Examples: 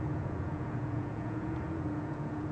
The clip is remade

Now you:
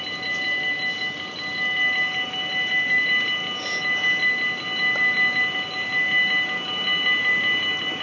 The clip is recorded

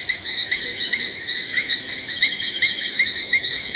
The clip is remade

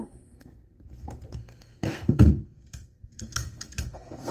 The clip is remade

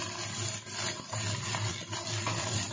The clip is recorded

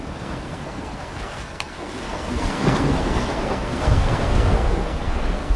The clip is remade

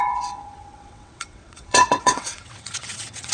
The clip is remade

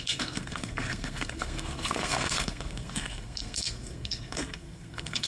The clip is remade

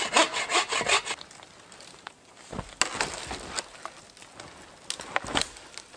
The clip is recorded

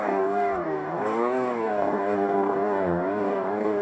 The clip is remade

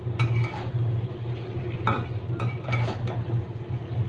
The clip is recorded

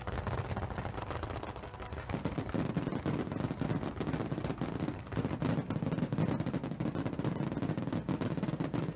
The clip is recorded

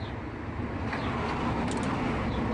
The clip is recorded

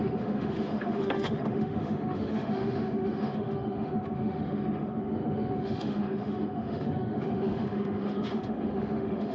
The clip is remade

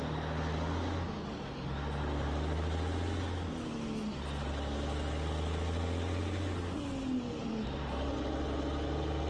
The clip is recorded